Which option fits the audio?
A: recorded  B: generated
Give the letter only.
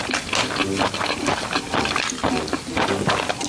A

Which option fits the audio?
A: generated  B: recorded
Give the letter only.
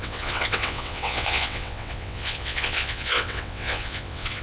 A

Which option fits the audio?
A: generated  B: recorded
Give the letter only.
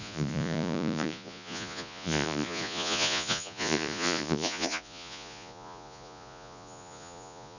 A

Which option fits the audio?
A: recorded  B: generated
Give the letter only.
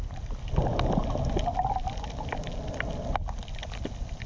A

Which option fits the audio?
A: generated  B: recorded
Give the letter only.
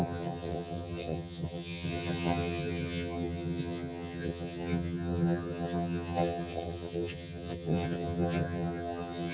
A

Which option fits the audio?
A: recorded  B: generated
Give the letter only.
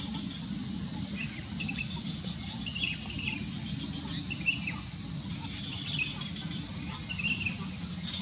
A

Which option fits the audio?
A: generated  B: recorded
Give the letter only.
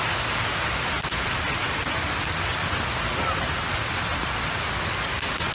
B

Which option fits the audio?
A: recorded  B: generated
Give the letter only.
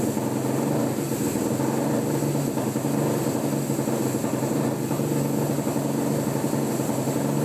A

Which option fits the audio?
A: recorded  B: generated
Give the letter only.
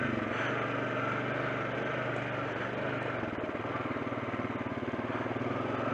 A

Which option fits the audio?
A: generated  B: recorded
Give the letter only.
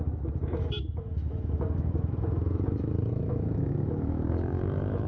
A